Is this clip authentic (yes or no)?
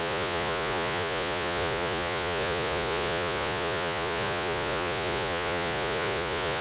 no